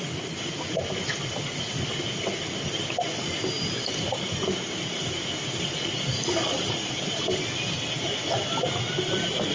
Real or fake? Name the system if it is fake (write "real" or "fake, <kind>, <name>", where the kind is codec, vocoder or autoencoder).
real